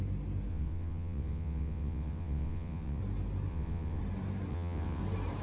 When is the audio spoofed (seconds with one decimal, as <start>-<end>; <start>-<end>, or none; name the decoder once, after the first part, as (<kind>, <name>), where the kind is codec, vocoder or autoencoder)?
0.5-3.0 (vocoder, WaveNeXt); 3.5-4.0; 4.5-5.0